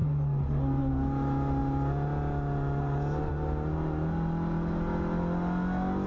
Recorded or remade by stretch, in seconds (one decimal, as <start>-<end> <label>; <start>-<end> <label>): 0.0-6.1 recorded